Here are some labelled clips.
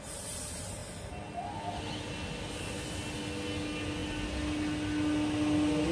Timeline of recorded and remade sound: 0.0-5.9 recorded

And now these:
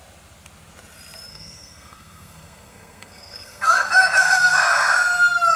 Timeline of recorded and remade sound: 0.0-1.3 recorded; 1.3-4.7 remade; 4.7-5.6 recorded

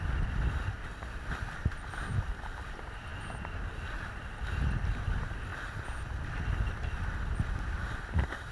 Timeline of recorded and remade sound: 0.0-8.5 recorded

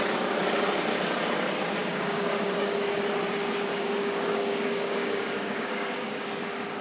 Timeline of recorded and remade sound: 0.0-1.8 recorded; 1.8-3.0 remade; 3.0-3.7 recorded; 3.7-6.8 remade

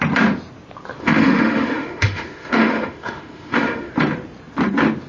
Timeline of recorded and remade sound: 0.0-1.0 recorded; 1.0-3.9 remade; 3.9-5.1 recorded

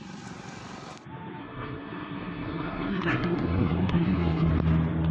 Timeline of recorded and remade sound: 0.0-1.4 recorded; 1.4-4.5 remade; 4.5-5.1 recorded

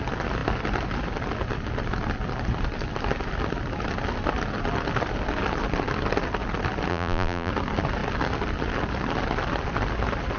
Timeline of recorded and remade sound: 0.0-6.9 recorded; 6.9-7.5 remade; 7.5-10.4 recorded